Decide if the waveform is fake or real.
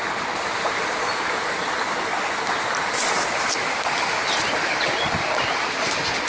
real